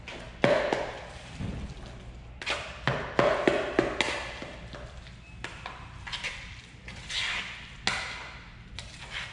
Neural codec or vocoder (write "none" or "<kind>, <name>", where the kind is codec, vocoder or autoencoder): none